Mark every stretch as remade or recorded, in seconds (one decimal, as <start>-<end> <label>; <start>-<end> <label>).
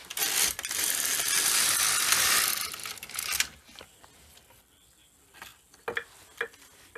0.0-7.0 recorded